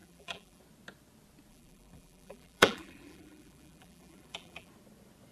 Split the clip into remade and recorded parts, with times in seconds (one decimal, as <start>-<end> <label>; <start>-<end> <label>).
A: 0.0-0.6 remade; 0.6-1.5 recorded; 1.5-4.7 remade; 4.7-5.3 recorded